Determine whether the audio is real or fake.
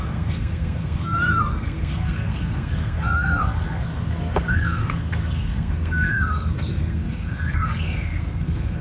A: fake